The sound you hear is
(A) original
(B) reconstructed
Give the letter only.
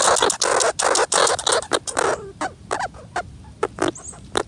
A